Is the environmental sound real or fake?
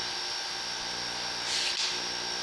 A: real